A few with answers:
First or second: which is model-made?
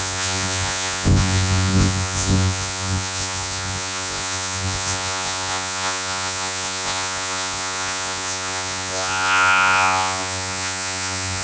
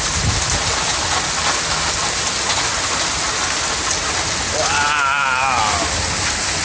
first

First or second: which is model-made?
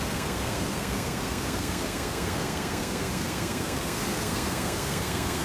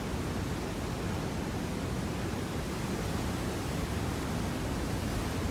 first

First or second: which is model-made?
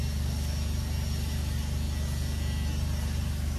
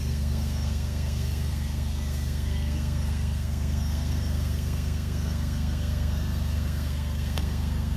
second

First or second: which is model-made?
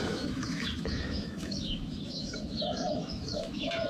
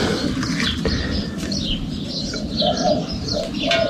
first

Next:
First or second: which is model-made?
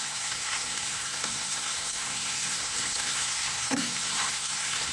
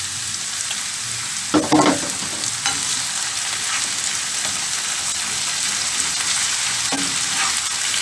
first